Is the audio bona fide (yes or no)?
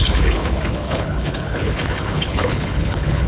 no